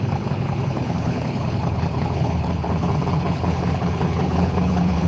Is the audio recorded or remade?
remade